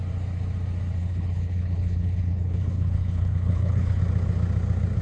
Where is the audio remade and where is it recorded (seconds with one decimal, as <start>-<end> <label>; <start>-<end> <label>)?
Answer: 0.0-1.0 recorded; 1.0-4.0 remade; 4.0-5.0 recorded